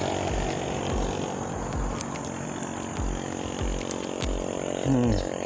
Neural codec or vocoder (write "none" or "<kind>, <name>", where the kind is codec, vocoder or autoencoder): none